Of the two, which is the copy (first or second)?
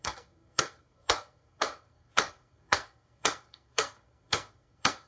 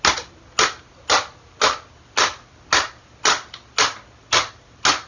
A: first